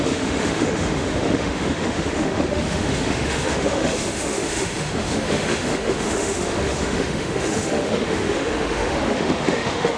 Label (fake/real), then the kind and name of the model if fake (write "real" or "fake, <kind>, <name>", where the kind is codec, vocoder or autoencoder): fake, autoencoder, DAC-VAE